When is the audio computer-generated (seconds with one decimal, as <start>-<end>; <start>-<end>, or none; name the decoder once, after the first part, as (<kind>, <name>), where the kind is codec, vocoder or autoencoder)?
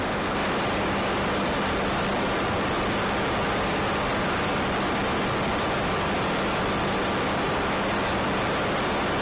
none